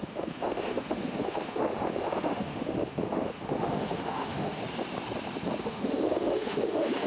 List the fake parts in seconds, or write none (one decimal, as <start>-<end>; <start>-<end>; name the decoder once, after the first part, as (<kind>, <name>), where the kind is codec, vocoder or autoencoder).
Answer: 0.0-4.6 (autoencoder, DAC-VAE); 5.6-7.1